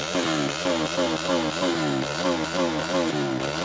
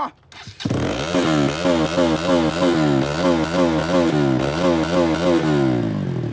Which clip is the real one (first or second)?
second